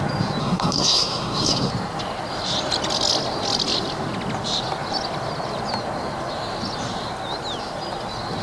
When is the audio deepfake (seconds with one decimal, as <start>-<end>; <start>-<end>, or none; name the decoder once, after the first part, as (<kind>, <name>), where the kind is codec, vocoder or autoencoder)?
0.4-1.7 (codec, SNAC)